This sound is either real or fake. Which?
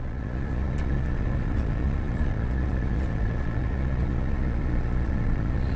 fake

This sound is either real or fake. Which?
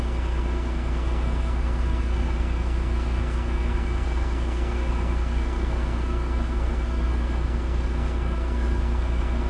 fake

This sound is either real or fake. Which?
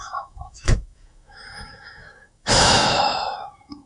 fake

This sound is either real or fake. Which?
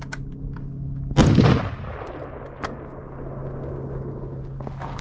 real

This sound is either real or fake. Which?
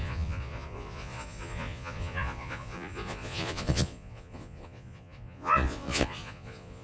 fake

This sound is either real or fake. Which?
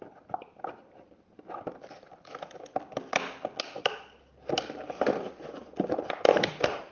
real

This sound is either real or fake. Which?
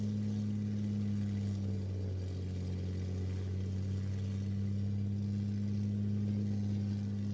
real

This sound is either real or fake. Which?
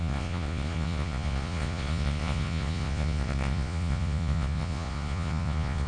fake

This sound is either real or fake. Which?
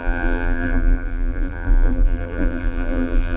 fake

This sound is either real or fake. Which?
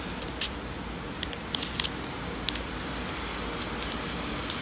real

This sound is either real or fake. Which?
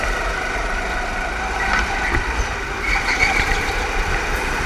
fake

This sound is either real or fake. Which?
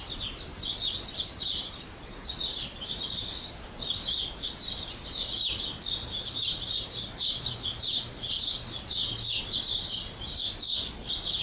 real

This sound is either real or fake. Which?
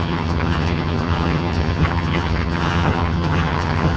fake